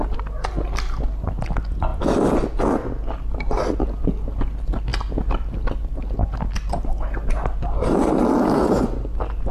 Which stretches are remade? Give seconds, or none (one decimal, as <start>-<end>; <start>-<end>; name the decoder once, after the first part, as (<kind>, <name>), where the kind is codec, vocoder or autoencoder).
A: none